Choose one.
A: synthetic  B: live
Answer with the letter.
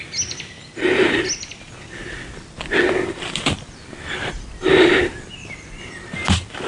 B